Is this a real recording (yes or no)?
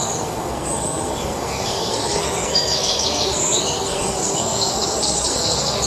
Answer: no